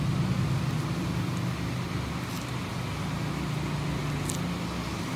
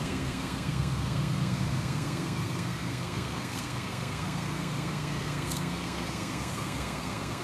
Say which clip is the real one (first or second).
first